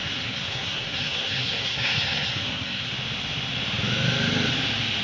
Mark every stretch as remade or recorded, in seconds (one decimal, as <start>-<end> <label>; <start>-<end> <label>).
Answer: 0.0-2.9 remade; 2.9-5.0 recorded